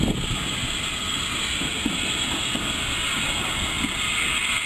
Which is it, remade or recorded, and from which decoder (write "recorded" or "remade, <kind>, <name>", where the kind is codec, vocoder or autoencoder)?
recorded